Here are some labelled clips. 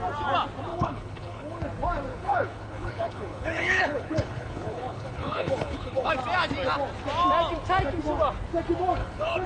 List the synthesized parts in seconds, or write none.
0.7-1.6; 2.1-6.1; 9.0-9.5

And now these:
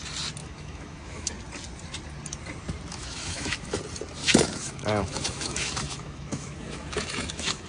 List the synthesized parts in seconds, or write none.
0.4-1.3; 2.9-3.8; 4.2-7.7

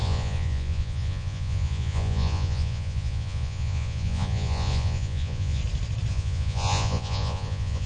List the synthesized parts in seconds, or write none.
0.0-5.6; 6.1-7.9

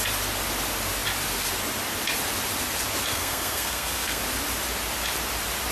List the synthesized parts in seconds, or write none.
3.1-4.2

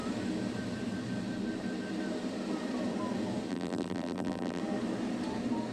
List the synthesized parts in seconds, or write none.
3.5-4.6

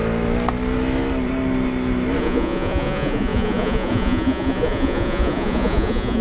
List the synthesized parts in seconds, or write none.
2.2-6.2